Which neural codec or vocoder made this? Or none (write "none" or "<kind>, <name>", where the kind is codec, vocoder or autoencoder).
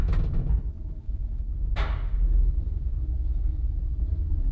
none